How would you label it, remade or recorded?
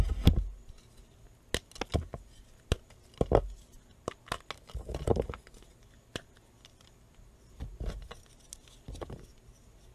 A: recorded